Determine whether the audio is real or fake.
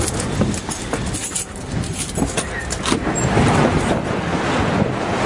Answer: real